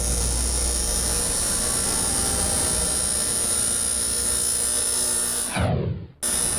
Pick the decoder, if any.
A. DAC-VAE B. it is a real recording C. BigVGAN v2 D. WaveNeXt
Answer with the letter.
B